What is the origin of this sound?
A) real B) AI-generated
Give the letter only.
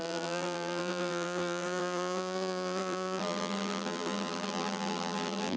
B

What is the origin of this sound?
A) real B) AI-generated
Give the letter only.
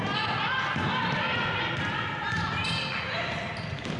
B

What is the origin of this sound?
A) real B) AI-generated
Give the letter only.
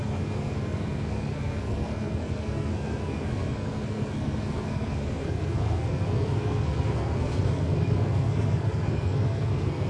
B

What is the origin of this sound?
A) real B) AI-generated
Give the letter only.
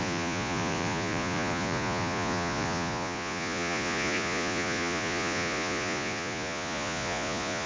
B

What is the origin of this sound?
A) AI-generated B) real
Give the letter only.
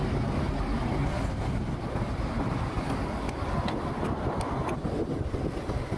B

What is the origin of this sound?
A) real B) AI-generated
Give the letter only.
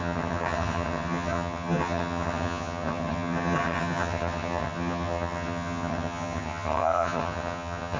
B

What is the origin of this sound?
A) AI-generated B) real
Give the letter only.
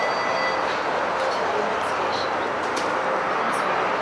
B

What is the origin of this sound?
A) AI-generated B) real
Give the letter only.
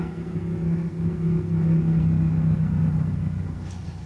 A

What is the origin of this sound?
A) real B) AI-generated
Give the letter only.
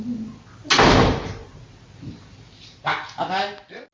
A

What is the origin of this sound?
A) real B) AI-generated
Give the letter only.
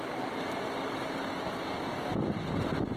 A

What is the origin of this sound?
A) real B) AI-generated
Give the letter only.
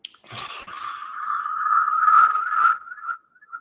A